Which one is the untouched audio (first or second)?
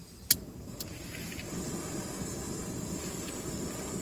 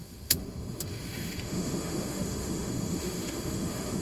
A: first